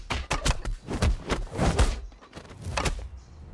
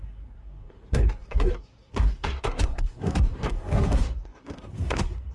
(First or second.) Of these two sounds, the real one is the first